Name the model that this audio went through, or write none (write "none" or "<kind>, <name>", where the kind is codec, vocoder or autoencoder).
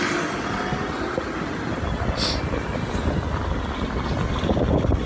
none